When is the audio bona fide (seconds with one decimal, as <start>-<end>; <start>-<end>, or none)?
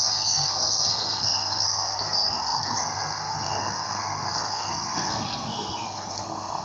none